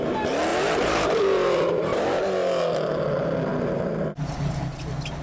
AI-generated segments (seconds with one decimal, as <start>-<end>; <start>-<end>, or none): 0.5-2.6